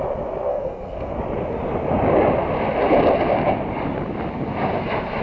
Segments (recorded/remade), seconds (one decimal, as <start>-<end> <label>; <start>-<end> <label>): 0.0-0.5 recorded; 0.5-1.1 remade; 1.1-5.2 recorded